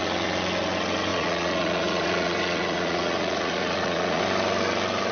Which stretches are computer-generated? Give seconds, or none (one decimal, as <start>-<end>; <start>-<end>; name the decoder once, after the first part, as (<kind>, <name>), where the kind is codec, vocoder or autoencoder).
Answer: 1.1-4.2 (vocoder, Vocos)